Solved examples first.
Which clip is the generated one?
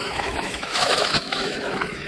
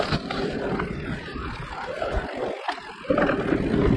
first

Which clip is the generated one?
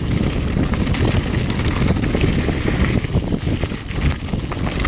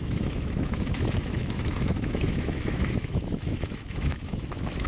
second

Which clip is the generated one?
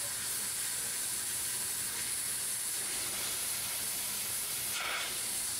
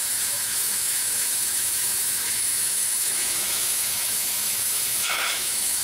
second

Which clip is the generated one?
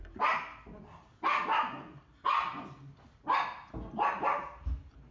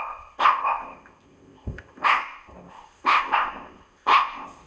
second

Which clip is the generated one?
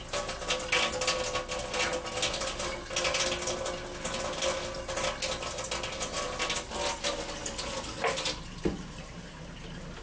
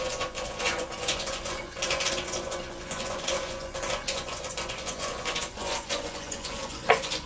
second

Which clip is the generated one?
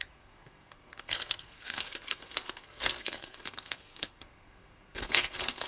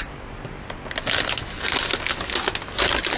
first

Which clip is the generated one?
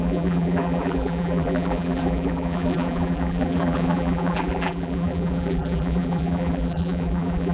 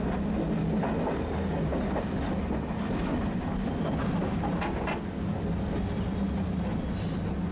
first